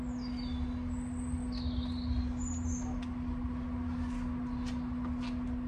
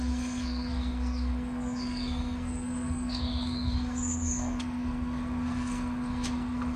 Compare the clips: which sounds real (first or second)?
first